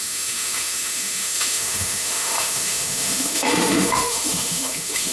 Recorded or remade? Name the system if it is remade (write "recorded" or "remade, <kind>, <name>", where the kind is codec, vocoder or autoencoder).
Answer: remade, autoencoder, DAC-VAE